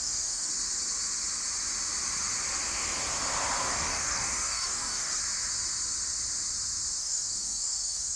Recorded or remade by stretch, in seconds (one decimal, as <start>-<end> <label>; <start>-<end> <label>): 0.0-0.5 remade; 0.5-3.7 recorded; 3.7-5.2 remade; 5.2-7.0 recorded; 7.0-8.2 remade